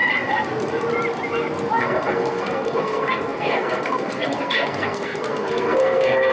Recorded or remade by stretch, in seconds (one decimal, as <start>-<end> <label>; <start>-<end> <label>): 0.0-1.8 recorded; 1.8-6.3 remade